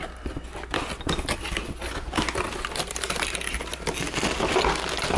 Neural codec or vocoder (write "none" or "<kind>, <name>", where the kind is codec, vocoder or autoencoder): none